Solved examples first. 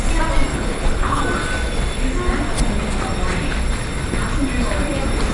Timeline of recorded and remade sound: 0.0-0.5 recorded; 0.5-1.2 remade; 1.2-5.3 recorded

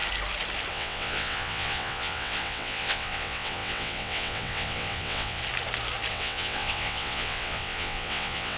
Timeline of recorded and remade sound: 0.0-0.7 recorded; 0.7-5.4 remade; 5.4-6.1 recorded; 6.1-8.6 remade

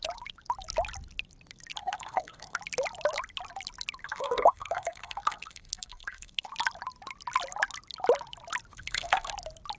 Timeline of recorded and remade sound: 0.0-1.8 recorded; 1.8-2.6 remade; 2.6-4.0 recorded; 4.0-6.5 remade; 6.5-8.7 recorded; 8.7-9.3 remade; 9.3-9.8 recorded

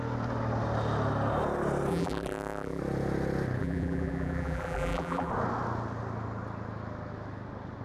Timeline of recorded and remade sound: 0.0-1.9 recorded; 1.9-2.8 remade; 2.8-3.6 recorded; 3.6-5.3 remade; 5.3-7.8 recorded